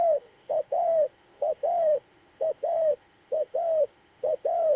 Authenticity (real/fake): fake